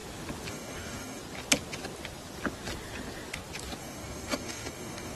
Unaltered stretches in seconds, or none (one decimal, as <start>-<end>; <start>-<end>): 0.0-0.5; 1.2-3.8